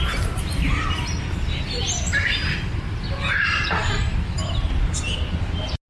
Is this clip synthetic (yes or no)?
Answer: no